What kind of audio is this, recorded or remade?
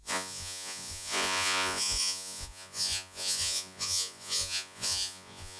remade